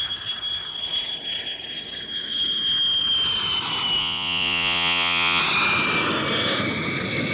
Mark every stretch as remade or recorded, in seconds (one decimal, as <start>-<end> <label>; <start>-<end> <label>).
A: 0.0-4.0 recorded; 4.0-5.4 remade; 5.4-7.3 recorded